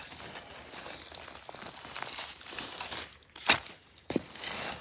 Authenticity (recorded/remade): recorded